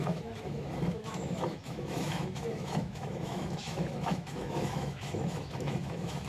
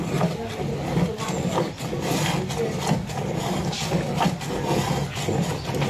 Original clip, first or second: second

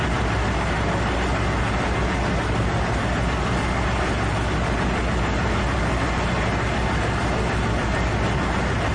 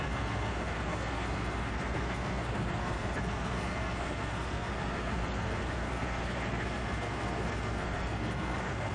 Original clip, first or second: first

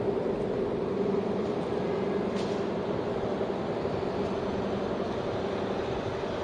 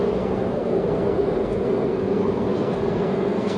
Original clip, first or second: first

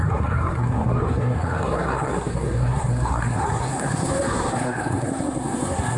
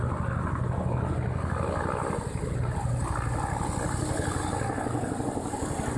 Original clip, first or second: second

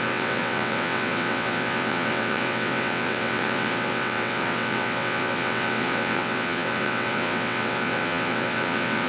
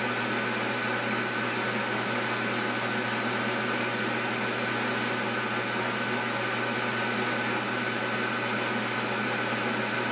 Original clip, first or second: second